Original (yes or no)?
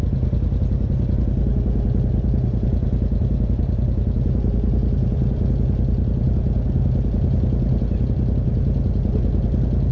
yes